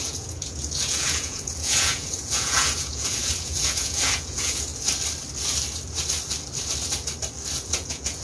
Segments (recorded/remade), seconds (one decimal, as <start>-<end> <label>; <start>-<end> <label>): 0.0-4.7 remade; 4.7-7.7 recorded; 7.7-8.2 remade